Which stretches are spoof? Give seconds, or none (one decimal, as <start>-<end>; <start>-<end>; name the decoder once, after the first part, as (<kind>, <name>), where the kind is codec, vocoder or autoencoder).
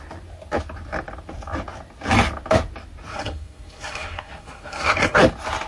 3.1-5.2 (codec, SNAC)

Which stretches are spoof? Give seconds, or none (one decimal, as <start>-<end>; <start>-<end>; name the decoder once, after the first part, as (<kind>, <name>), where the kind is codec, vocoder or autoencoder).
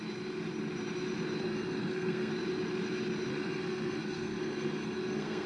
1.4-2.3 (codec, SNAC); 3.3-5.5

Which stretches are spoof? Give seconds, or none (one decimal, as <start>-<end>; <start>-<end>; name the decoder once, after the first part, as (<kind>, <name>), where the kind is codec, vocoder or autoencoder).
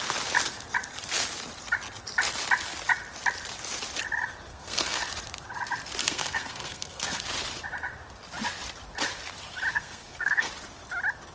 4.5-5.0 (codec, SNAC); 6.0-7.2; 9.7-10.5